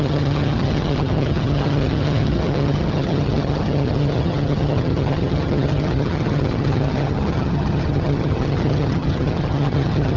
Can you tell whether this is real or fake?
fake